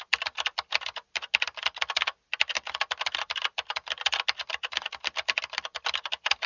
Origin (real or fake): real